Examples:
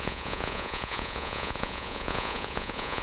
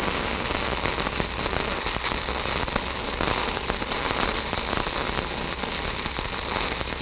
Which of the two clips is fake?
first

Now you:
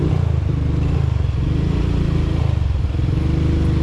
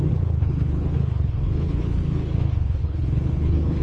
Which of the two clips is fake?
second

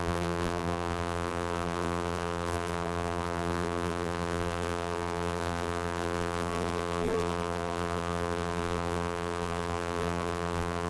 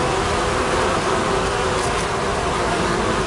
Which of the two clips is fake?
first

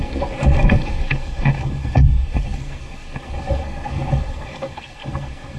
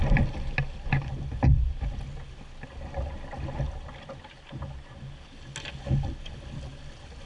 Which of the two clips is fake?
first